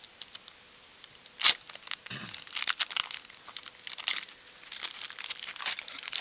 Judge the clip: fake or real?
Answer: real